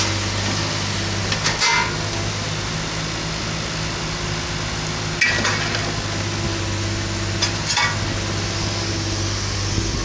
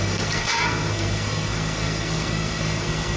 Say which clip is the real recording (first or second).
first